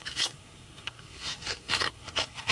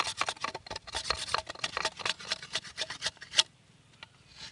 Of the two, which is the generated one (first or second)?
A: first